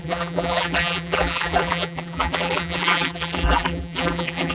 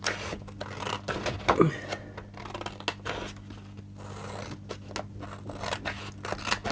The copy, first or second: first